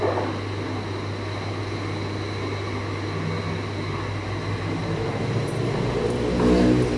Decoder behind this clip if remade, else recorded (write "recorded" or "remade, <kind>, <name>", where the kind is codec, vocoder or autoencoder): recorded